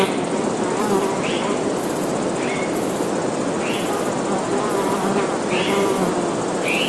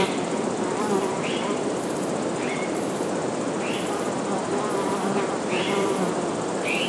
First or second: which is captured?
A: first